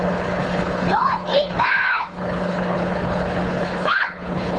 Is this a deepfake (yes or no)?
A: yes